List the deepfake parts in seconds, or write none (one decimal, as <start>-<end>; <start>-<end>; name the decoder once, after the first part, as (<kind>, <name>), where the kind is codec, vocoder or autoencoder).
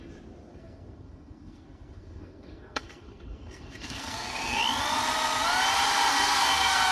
0.5-4.6 (codec, SNAC); 6.1-6.9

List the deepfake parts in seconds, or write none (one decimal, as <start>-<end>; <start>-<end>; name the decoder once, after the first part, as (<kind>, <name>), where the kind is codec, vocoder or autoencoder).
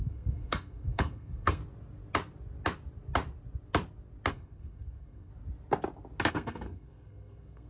0.0-1.6 (codec, SNAC); 4.3-5.3; 6.3-7.7